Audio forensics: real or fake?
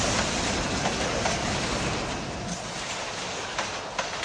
real